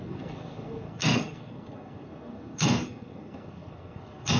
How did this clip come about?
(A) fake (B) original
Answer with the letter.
A